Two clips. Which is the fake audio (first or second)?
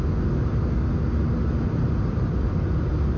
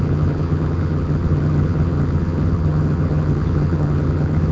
second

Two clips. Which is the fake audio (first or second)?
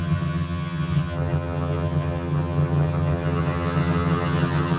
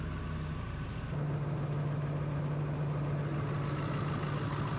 first